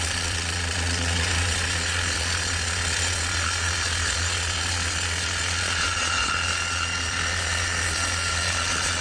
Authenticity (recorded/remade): remade